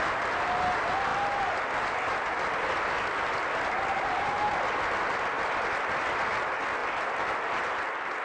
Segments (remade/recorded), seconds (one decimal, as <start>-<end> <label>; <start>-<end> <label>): 0.0-8.2 recorded